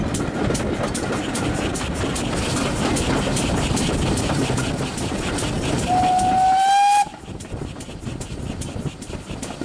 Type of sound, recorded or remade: recorded